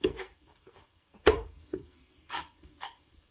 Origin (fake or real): fake